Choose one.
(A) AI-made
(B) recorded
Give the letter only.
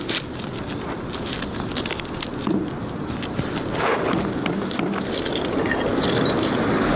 B